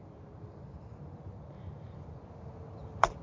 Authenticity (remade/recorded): recorded